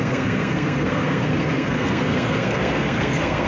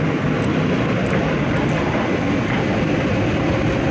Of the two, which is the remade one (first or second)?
first